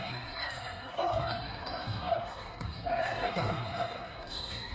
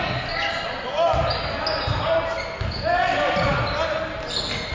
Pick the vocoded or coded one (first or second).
first